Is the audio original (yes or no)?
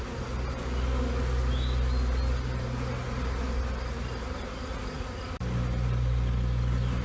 yes